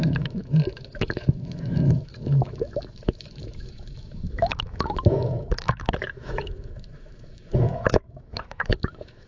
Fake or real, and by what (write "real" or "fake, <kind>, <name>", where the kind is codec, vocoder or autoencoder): fake, autoencoder, DAC-VAE